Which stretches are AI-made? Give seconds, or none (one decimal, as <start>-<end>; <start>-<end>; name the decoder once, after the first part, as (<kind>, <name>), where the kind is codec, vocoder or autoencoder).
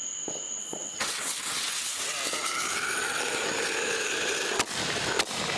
0.6-2.1 (vocoder, WaveNeXt)